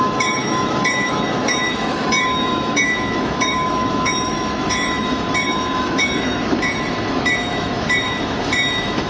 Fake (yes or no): yes